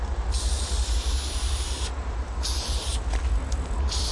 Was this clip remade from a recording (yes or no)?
no